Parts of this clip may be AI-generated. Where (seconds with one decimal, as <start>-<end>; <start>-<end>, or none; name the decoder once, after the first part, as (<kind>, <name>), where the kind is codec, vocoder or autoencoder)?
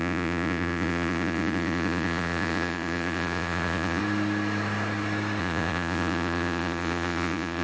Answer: 0.0-4.0 (vocoder, Vocos); 5.4-7.6